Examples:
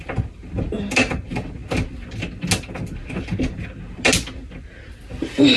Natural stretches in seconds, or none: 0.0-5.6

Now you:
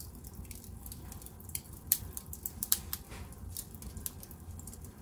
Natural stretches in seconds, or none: 0.0-0.8; 2.9-5.0

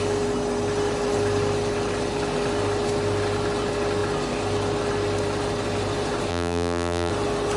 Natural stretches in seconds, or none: 0.0-6.3; 7.1-7.6